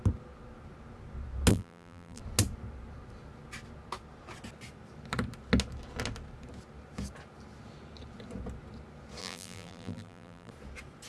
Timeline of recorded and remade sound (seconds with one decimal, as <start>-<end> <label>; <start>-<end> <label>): 0.0-1.5 recorded; 1.5-2.2 remade; 2.2-9.2 recorded; 9.2-10.5 remade; 10.5-11.1 recorded